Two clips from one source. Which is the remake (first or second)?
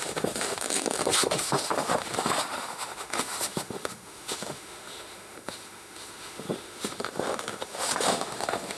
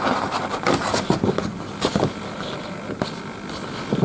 first